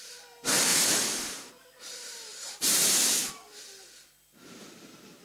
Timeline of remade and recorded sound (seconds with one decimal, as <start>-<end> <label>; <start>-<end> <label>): 0.0-0.7 recorded; 0.7-1.5 remade; 1.5-2.3 recorded; 2.3-2.9 remade; 2.9-4.3 recorded; 4.3-5.2 remade